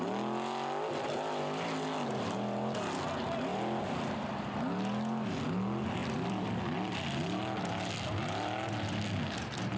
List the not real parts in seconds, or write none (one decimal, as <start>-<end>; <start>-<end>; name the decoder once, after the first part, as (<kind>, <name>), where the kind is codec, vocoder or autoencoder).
6.0-7.4 (vocoder, BigVGAN v2)